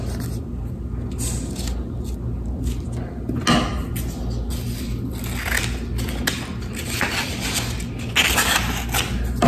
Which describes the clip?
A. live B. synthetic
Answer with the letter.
A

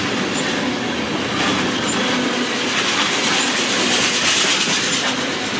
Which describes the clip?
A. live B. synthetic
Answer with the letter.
A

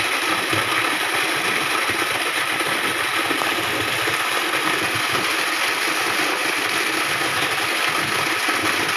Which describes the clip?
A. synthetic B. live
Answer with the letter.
B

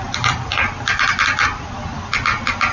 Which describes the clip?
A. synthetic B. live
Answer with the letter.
B